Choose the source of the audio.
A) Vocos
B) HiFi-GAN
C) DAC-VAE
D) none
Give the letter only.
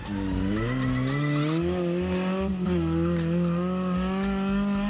D